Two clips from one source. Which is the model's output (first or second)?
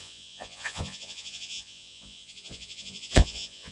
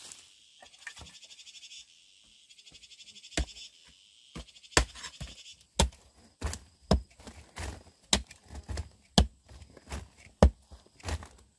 first